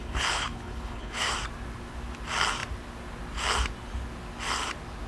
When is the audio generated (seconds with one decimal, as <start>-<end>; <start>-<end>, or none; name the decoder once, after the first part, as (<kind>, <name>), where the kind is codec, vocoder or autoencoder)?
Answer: 0.0-1.3 (codec, HILCodec)